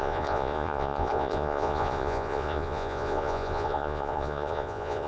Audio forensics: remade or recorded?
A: remade